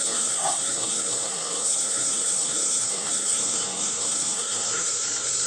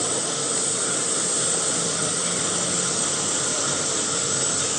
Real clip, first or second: second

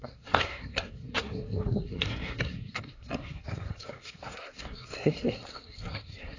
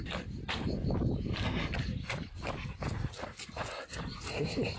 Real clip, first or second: second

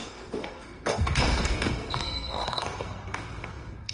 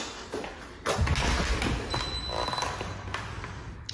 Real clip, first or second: second